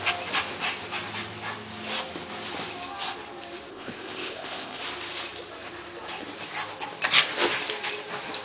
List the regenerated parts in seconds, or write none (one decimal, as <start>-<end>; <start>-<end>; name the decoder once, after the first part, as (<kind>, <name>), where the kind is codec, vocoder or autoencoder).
3.7-4.8 (codec, ZipCodec)